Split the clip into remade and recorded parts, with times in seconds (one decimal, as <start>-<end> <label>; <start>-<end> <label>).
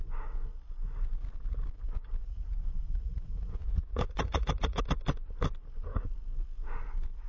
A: 0.0-2.2 recorded; 2.2-4.8 remade; 4.8-7.3 recorded